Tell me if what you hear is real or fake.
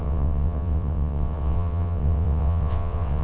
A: fake